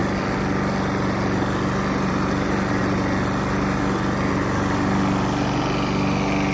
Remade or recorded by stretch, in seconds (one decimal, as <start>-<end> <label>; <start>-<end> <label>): 0.0-6.5 recorded